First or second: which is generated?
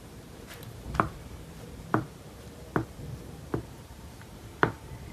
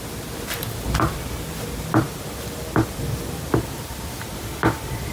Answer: first